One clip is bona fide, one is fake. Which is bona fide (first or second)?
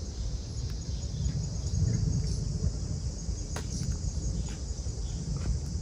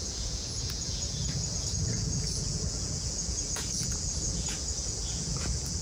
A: first